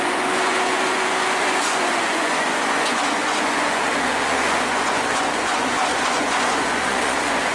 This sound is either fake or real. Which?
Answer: fake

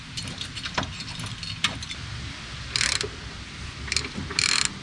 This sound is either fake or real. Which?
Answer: real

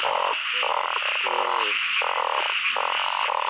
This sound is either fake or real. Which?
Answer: real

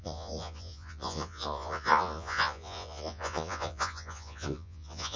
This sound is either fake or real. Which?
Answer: fake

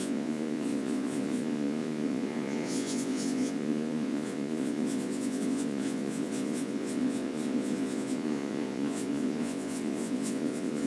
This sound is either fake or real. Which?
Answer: fake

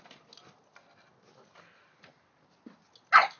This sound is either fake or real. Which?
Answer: real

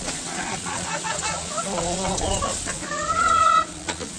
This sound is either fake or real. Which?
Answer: fake